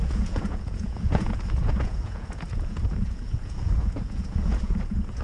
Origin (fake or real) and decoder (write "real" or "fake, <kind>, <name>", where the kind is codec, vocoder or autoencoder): fake, vocoder, Vocos